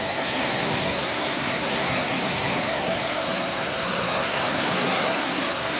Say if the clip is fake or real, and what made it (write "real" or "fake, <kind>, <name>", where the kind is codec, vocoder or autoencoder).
fake, codec, SNAC